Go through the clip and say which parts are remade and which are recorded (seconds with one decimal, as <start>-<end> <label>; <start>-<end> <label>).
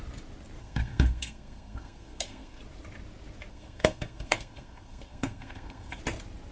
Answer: 0.0-0.6 recorded; 0.6-2.6 remade; 2.6-3.5 recorded; 3.5-6.0 remade; 6.0-6.5 recorded